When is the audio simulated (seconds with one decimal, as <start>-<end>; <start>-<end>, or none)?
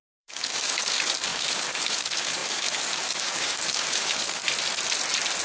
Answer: 0.0-4.4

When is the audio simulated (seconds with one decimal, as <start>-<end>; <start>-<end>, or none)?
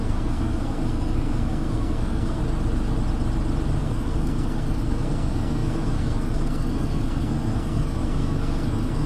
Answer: 0.0-2.4; 3.8-9.1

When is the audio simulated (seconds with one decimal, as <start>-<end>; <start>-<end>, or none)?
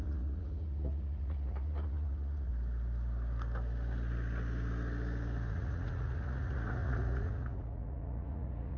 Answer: 0.0-2.5; 5.5-8.8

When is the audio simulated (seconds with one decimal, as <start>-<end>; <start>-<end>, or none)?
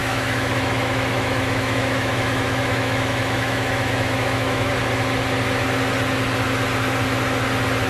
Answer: 0.0-4.7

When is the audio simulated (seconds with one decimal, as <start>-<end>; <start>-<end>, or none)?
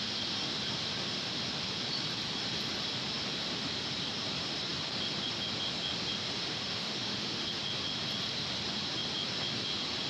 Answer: 6.7-7.5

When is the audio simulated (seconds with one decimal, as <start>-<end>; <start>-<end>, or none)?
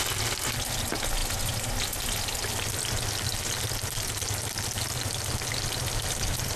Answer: none